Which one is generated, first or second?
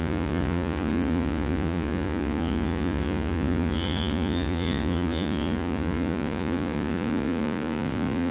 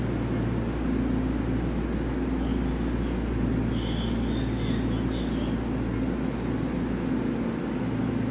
first